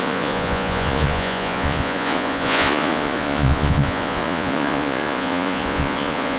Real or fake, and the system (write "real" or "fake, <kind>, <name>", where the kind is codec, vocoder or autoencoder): fake, vocoder, Vocos